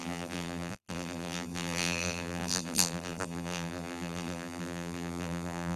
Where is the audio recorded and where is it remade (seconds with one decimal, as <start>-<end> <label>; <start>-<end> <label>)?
0.0-5.8 remade